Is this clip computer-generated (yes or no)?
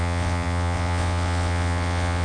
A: yes